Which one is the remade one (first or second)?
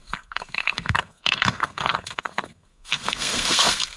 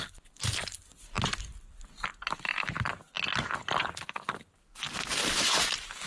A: first